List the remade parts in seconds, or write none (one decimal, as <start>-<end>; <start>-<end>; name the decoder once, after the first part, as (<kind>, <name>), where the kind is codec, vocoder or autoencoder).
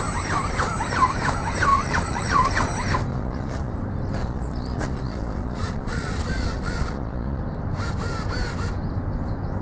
1.7-2.5 (vocoder, Vocos); 3.1-3.7; 4.2-7.4